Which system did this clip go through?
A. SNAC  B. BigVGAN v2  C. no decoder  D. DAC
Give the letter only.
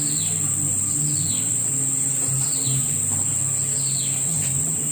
C